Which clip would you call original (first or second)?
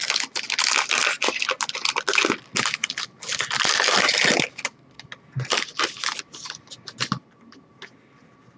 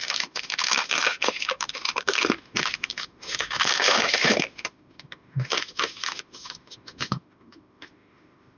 first